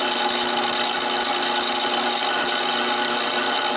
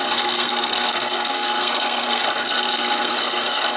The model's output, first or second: second